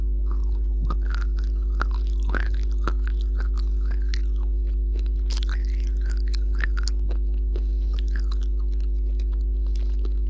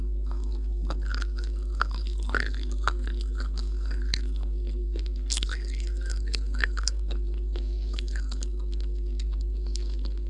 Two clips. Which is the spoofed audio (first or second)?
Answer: second